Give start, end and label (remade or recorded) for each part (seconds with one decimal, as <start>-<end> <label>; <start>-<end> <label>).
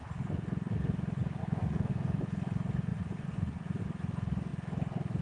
0.0-1.4 recorded; 1.4-1.9 remade; 1.9-2.9 recorded; 2.9-3.8 remade; 3.8-5.2 recorded